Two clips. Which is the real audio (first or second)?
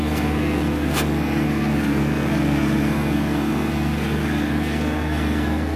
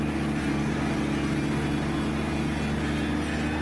second